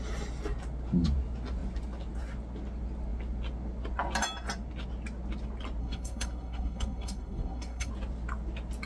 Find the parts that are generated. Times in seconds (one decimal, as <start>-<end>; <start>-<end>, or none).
5.8-7.9